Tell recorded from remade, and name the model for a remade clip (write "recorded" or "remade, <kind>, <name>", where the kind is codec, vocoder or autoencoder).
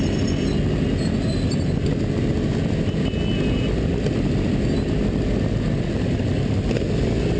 recorded